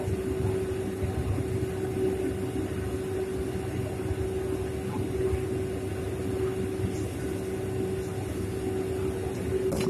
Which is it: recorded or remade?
recorded